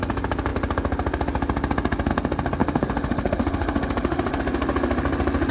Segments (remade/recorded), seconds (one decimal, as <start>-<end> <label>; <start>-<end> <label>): 0.0-2.6 recorded; 2.6-4.4 remade; 4.4-5.5 recorded